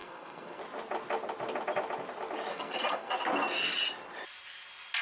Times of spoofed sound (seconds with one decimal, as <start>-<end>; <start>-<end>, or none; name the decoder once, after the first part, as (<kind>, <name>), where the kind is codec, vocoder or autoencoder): 0.0-0.6 (codec, SNAC); 2.5-3.1